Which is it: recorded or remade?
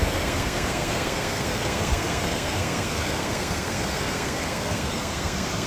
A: remade